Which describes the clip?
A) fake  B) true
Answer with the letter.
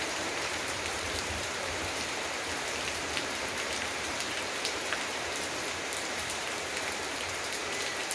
A